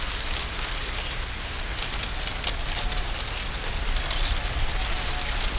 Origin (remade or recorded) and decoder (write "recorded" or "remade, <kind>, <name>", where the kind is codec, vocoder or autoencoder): recorded